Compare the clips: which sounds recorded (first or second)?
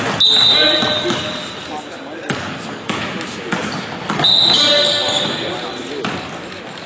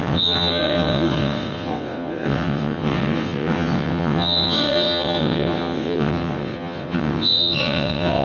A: first